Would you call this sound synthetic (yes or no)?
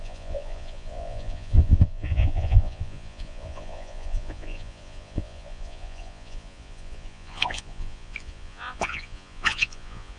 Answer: yes